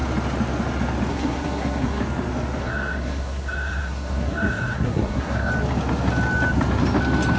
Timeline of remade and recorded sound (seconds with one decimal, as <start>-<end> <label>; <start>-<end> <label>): 0.0-1.1 recorded; 1.1-2.0 remade; 2.0-2.6 recorded; 2.6-5.5 remade; 5.5-7.4 recorded